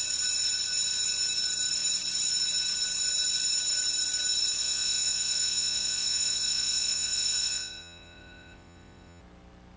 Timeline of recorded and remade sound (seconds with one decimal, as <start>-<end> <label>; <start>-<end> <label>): 0.0-4.6 recorded; 4.6-9.2 remade; 9.2-9.8 recorded

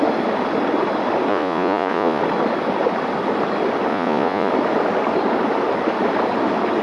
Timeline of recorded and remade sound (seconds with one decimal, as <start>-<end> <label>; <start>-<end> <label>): 0.0-1.3 recorded; 1.3-2.2 remade; 2.2-3.9 recorded; 3.9-4.5 remade; 4.5-6.8 recorded

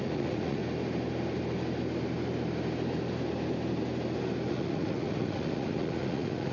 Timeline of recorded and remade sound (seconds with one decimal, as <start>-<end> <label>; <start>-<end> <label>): 0.0-0.6 remade; 0.6-4.5 recorded; 4.5-6.5 remade

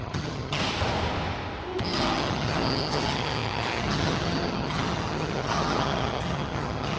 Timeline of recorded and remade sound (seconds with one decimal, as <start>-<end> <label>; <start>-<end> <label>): 0.0-0.6 remade; 0.6-1.8 recorded; 1.8-7.0 remade

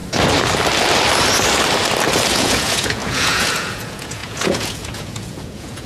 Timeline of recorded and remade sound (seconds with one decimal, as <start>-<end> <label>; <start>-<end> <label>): 0.0-2.3 recorded; 2.3-5.9 remade

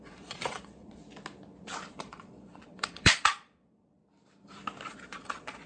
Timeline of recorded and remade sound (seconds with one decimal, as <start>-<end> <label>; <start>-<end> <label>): 0.0-1.0 remade; 1.0-1.9 recorded; 1.9-4.0 remade; 4.0-4.9 recorded; 4.9-5.7 remade

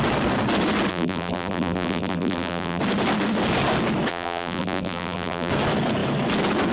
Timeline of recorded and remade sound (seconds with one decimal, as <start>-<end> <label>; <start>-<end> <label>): 0.0-0.9 recorded; 0.9-2.8 remade; 2.8-4.1 recorded; 4.1-5.5 remade; 5.5-6.7 recorded